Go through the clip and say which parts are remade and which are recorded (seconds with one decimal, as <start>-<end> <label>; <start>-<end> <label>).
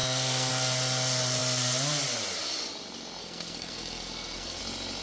0.0-0.5 remade; 0.5-3.2 recorded; 3.2-4.6 remade; 4.6-5.0 recorded